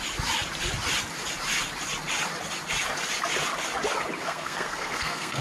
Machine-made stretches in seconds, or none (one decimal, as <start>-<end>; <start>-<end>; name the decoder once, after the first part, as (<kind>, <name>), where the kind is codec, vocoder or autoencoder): 4.2-5.4 (codec, SNAC)

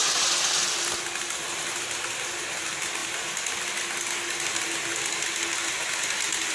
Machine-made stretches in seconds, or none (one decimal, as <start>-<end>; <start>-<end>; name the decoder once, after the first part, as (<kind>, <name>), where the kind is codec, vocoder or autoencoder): none

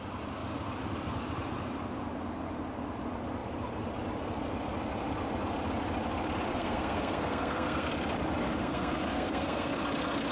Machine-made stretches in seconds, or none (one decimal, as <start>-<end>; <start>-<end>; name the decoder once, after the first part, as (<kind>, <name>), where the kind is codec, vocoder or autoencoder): 6.5-7.9 (codec, SNAC); 8.6-9.7